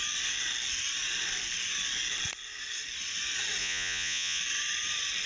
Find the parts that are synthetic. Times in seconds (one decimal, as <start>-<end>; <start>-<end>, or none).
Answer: 3.6-4.4